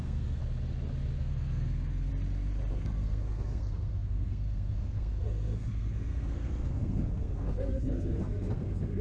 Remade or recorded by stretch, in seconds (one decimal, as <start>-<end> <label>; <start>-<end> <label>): 0.0-0.4 remade; 0.4-1.2 recorded; 1.2-2.1 remade; 2.1-2.7 recorded; 2.7-9.0 remade